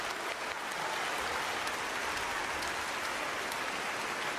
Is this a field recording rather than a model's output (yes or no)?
yes